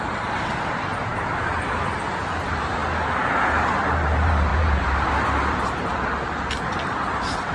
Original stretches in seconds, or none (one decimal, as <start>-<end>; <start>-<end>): 1.1-2.2; 2.8-3.5